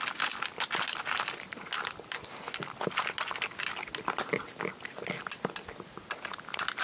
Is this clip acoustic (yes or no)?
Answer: yes